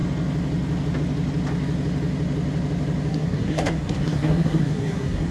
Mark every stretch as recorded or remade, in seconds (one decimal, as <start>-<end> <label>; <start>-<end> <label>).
0.0-3.1 recorded; 3.1-5.3 remade